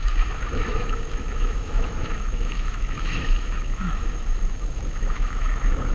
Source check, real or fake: fake